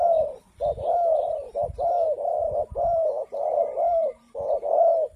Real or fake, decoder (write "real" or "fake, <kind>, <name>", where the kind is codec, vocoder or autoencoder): fake, vocoder, BigVGAN v2